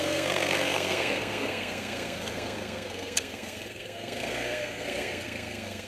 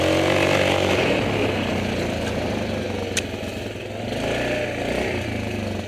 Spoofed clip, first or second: first